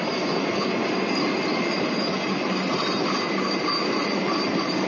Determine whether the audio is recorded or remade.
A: recorded